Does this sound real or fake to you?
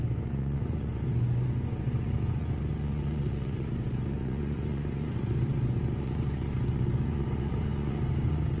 fake